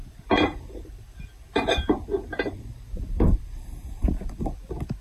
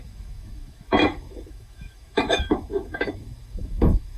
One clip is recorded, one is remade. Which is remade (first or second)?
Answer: second